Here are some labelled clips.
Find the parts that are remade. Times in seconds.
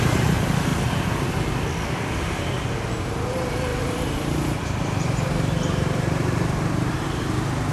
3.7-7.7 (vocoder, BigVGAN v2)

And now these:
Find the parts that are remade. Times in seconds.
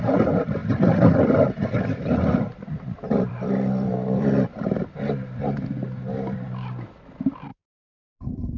0.6-5.4 (vocoder, BigVGAN v2); 7.5-8.6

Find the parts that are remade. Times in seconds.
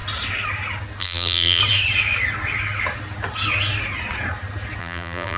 1.0-1.6 (vocoder, BigVGAN v2); 4.8-5.4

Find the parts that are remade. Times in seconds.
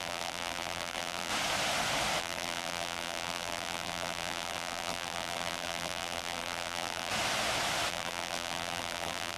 0.0-1.3 (vocoder, BigVGAN v2); 2.2-7.1; 7.9-9.4